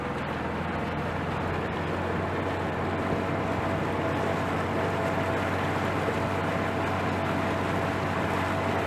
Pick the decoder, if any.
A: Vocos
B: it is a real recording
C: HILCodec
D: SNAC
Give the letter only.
B